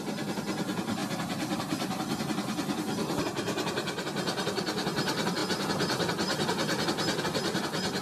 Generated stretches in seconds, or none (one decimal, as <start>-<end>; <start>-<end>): 1.0-2.2